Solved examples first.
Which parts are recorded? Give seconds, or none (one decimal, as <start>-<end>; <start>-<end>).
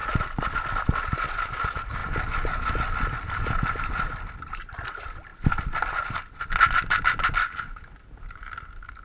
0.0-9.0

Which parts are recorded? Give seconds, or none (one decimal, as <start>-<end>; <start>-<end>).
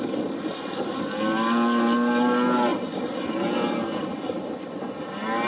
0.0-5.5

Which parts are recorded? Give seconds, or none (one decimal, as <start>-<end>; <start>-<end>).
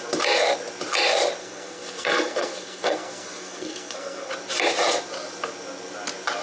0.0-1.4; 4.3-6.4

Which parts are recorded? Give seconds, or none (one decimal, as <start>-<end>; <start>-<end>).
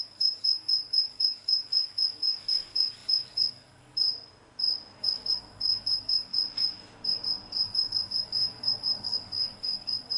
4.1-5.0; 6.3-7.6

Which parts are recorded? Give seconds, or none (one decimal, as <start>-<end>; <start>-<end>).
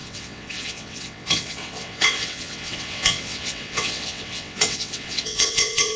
none